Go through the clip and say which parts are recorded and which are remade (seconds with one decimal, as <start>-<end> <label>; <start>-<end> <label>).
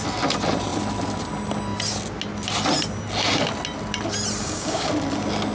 0.0-4.4 recorded; 4.4-4.9 remade; 4.9-5.5 recorded